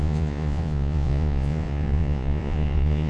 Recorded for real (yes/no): no